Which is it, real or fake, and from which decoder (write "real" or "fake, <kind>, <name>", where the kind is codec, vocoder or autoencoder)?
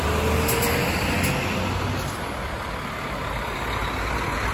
real